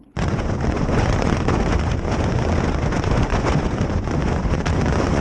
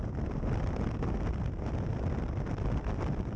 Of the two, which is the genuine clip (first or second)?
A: second